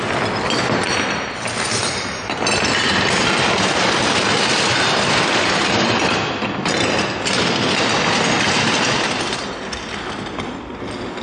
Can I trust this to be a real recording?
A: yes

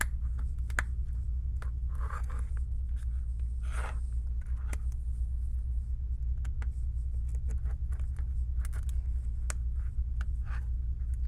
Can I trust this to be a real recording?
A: yes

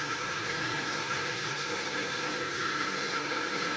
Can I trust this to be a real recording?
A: no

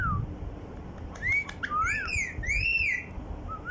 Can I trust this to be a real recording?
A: yes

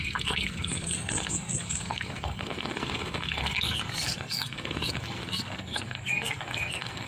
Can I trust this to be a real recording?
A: no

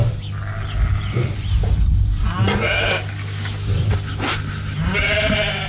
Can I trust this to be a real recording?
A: yes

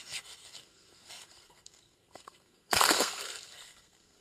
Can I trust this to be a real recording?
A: no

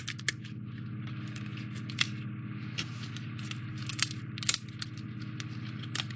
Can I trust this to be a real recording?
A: yes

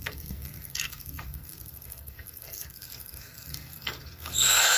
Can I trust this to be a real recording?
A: no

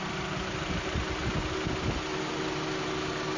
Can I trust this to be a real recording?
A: yes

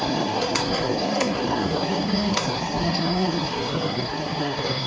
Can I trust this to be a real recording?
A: no